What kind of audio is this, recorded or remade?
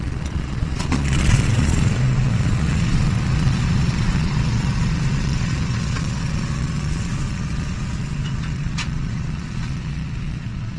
remade